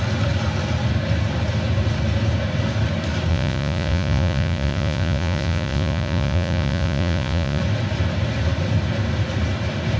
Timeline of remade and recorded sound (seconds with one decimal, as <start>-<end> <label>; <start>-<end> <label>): 0.0-3.3 recorded; 3.3-7.6 remade; 7.6-10.0 recorded

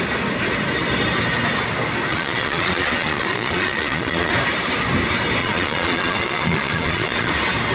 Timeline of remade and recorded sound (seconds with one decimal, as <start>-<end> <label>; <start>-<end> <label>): 0.0-2.1 recorded; 2.1-4.3 remade; 4.3-5.4 recorded; 5.4-7.3 remade; 7.3-7.7 recorded